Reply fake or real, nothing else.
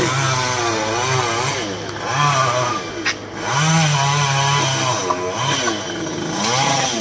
real